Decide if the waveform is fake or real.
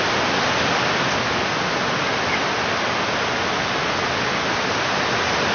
real